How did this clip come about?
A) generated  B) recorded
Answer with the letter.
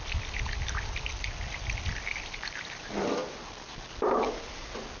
B